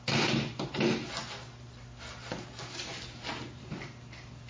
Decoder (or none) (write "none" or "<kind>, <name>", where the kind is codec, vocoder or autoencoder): none